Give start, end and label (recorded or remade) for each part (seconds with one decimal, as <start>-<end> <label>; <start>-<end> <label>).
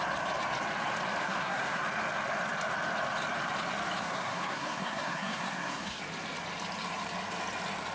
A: 0.0-1.2 recorded; 1.2-1.8 remade; 1.8-4.0 recorded; 4.0-6.0 remade; 6.0-7.9 recorded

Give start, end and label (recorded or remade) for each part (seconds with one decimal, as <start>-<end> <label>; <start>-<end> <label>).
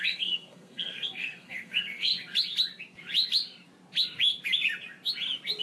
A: 0.0-2.1 remade; 2.1-5.6 recorded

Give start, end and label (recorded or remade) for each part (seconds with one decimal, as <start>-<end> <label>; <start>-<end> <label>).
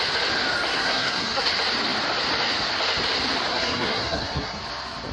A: 0.0-0.7 recorded; 0.7-1.5 remade; 1.5-3.5 recorded; 3.5-4.6 remade; 4.6-5.1 recorded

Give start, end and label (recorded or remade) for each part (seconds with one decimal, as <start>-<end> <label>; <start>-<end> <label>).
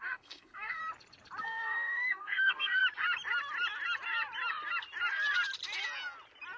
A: 0.0-0.8 remade; 0.8-1.4 recorded; 1.4-2.8 remade; 2.8-6.6 recorded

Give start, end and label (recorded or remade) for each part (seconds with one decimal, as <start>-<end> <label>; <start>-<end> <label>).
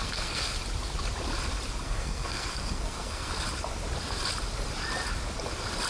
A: 0.0-0.6 remade; 0.6-1.8 recorded; 1.8-3.3 remade; 3.3-5.9 recorded